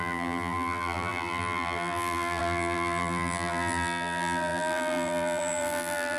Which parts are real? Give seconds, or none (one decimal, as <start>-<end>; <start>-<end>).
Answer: none